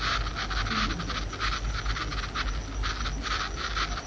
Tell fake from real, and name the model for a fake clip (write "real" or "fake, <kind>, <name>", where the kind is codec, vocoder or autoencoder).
real